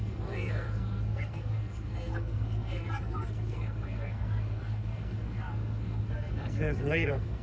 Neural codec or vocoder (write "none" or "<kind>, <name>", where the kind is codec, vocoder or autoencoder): codec, SNAC